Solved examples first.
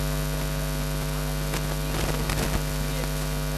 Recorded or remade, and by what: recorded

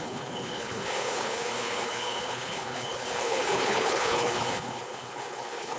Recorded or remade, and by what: remade, codec, HILCodec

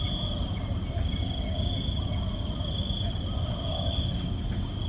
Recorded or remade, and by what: recorded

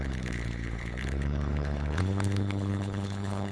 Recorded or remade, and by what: remade, codec, HILCodec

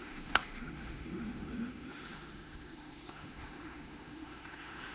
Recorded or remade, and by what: remade, autoencoder, DAC-VAE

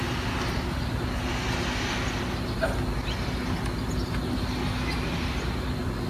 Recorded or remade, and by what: recorded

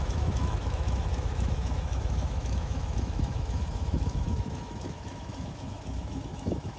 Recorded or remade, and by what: remade, autoencoder, DAC-VAE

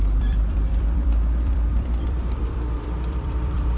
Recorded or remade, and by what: remade, vocoder, BigVGAN v2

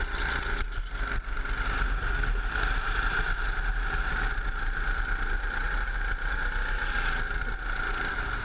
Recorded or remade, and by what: recorded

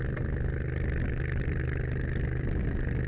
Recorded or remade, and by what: recorded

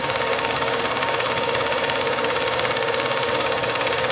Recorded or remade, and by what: remade, codec, DAC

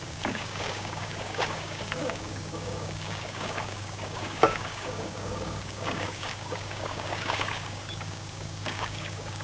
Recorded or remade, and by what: remade, codec, DAC